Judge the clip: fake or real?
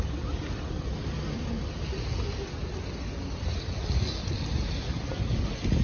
real